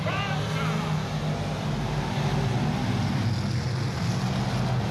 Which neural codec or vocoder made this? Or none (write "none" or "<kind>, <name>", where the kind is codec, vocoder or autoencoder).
none